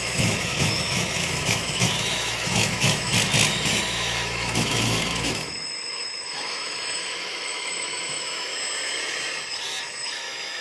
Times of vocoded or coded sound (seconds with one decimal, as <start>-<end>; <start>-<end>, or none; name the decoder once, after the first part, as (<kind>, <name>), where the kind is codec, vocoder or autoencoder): 0.0-3.1 (autoencoder, DAC-VAE); 3.7-8.5; 9.8-10.6